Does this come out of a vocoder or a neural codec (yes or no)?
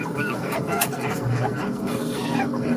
yes